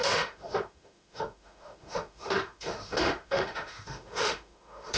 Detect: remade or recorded remade